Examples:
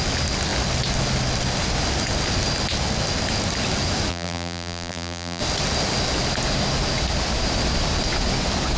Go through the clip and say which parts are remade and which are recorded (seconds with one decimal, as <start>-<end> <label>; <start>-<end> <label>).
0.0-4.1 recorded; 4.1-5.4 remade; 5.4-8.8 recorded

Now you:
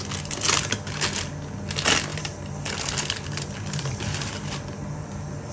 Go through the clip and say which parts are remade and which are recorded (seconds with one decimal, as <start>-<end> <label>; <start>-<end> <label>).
0.0-2.1 recorded; 2.1-5.5 remade

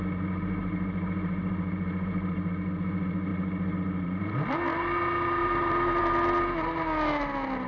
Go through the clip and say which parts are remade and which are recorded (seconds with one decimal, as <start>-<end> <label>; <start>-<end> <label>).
0.0-0.6 recorded; 0.6-2.5 remade; 2.5-3.3 recorded; 3.3-4.6 remade; 4.6-5.4 recorded; 5.4-6.0 remade; 6.0-7.7 recorded